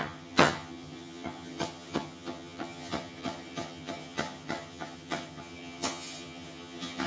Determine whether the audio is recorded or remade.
remade